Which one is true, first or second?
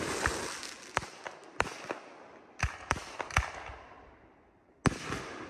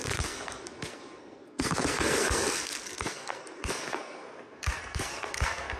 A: first